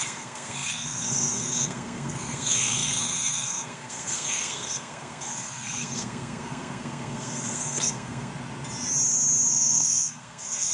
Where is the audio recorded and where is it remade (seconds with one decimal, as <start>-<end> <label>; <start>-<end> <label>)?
0.0-8.3 remade; 8.3-9.5 recorded; 9.5-10.7 remade